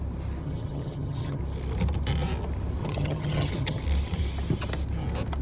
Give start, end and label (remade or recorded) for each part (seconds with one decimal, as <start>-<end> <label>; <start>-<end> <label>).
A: 0.0-0.4 recorded; 0.4-1.4 remade; 1.4-2.8 recorded; 2.8-3.8 remade; 3.8-5.4 recorded